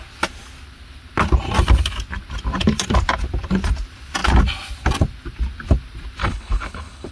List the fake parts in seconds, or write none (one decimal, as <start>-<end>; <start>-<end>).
6.2-7.1